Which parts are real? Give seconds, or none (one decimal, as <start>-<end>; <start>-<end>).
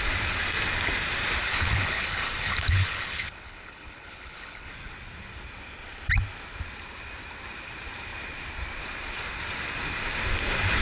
0.0-1.4; 4.7-10.8